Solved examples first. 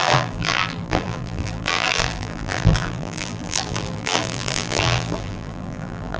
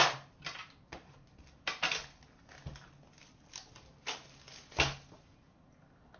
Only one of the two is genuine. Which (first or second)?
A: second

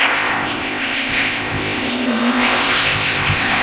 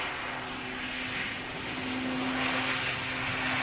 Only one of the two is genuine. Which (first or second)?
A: second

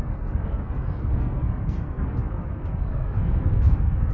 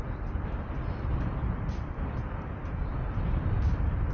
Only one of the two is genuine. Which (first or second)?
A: second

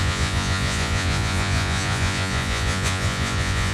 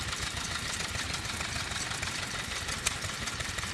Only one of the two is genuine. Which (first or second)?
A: second